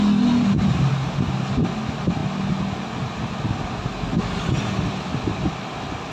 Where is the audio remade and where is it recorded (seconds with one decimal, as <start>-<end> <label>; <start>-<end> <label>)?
0.0-0.9 recorded; 0.9-1.4 remade; 1.4-6.1 recorded